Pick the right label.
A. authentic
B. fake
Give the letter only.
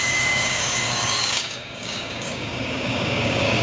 B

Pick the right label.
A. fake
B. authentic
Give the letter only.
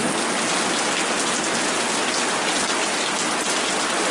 B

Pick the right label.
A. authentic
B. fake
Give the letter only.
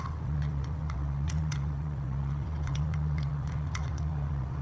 B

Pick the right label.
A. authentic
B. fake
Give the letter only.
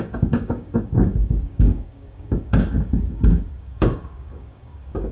B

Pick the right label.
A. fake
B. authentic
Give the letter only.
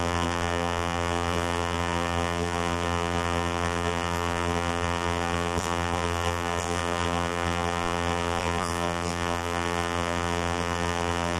A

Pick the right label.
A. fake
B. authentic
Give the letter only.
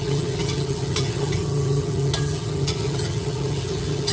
A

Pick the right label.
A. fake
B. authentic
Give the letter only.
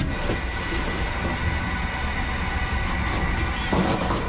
B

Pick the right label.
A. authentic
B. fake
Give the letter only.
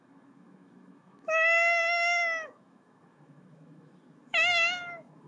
B